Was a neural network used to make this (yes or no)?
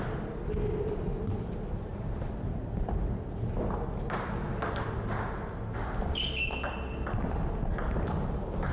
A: no